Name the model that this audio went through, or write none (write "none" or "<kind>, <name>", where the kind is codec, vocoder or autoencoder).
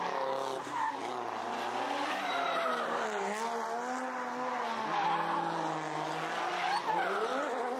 none